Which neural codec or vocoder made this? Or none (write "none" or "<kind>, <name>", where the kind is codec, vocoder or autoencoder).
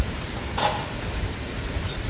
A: vocoder, BigVGAN v2